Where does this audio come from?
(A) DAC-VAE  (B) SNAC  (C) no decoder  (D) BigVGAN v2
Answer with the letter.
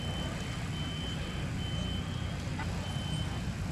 C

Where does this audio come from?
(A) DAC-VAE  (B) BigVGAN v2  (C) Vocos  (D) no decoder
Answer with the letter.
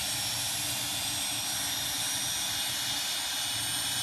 D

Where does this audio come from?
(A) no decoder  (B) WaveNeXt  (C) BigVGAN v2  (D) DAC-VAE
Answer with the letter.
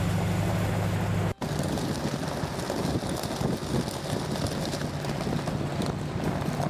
A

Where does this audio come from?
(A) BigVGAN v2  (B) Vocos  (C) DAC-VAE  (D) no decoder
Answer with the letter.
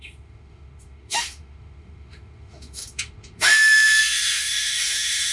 C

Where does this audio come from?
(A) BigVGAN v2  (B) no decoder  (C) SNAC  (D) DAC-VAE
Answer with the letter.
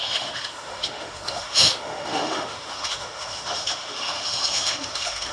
D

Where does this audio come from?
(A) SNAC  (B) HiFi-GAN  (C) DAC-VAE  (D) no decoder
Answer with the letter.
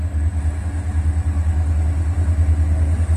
D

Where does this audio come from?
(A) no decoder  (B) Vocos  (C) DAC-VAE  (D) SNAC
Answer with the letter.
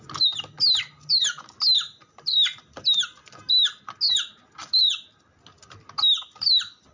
A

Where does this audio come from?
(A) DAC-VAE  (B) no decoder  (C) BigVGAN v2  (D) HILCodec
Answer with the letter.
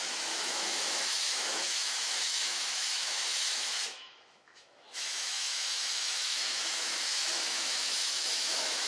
A